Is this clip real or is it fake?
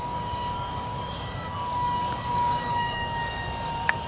fake